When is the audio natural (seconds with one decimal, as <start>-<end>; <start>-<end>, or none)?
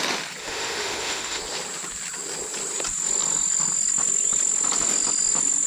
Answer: 0.0-0.4; 1.4-5.7